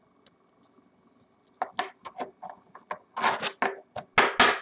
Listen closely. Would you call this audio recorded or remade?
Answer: recorded